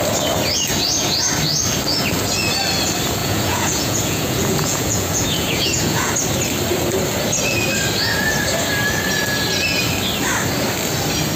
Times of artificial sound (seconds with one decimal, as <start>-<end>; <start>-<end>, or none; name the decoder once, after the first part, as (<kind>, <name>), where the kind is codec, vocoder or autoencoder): 3.2-6.1 (vocoder, Vocos)